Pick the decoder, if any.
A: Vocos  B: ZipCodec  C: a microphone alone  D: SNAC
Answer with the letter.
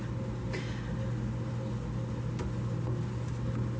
C